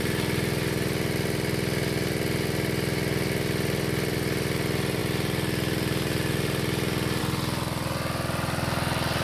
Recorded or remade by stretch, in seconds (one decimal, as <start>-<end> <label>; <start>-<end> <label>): 0.0-9.2 recorded